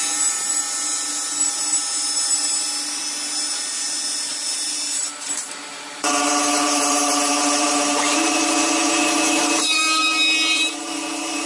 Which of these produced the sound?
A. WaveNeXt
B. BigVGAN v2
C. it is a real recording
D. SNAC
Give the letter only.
B